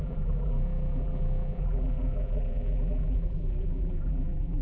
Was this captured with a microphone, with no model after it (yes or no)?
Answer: no